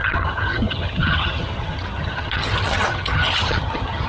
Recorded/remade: remade